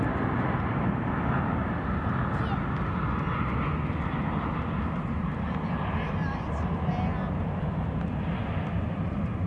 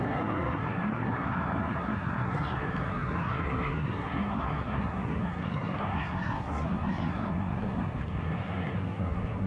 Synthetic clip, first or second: second